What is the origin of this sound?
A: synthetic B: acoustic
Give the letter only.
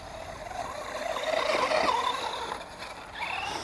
B